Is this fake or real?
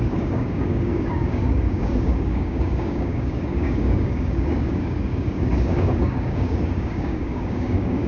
fake